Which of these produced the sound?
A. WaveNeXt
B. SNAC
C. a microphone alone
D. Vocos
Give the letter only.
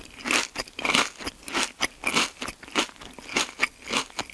C